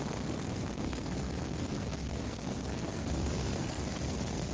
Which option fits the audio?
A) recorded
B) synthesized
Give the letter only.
B